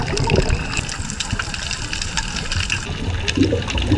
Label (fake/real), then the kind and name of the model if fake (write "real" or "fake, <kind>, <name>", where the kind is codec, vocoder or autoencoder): real